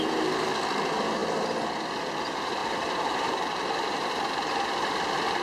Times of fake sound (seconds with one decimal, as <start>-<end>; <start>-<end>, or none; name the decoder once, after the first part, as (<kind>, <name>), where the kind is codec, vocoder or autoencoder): 2.6-4.1 (vocoder, BigVGAN v2)